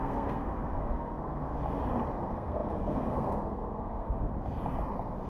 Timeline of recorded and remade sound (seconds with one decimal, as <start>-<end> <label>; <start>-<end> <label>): 0.0-1.5 remade; 1.5-2.2 recorded; 2.2-4.3 remade; 4.3-5.3 recorded